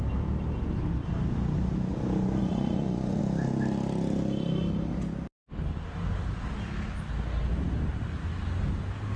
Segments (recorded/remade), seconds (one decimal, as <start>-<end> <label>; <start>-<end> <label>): 0.0-2.4 recorded; 2.4-3.2 remade; 3.2-9.2 recorded